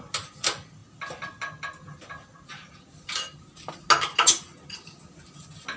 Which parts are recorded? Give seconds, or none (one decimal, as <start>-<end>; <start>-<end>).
0.0-5.8